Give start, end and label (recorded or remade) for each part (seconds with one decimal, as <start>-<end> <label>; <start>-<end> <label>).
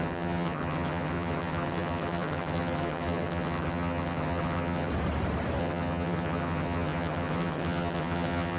0.0-4.9 remade; 4.9-5.6 recorded; 5.6-8.6 remade